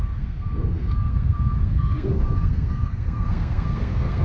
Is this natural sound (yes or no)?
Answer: no